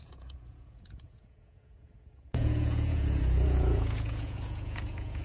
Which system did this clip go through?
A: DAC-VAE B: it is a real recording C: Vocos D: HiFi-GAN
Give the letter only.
C